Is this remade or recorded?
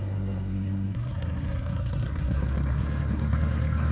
remade